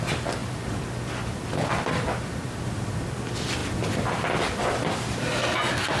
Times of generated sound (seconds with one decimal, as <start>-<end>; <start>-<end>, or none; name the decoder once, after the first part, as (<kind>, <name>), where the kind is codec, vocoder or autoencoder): none